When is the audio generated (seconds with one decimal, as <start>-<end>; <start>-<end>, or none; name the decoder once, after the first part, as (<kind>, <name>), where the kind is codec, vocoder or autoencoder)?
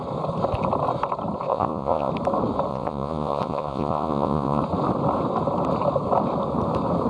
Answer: 1.5-2.1 (vocoder, Vocos); 2.7-4.6